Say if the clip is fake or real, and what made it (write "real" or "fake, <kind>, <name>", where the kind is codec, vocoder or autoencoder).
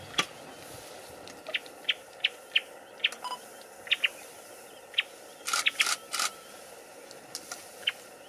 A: real